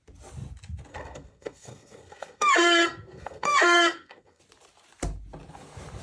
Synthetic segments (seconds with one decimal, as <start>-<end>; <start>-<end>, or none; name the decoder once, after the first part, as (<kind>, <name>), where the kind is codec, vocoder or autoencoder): 0.9-4.4 (codec, SNAC)